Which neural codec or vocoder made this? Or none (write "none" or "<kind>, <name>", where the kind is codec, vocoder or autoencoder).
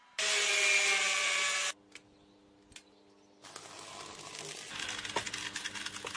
none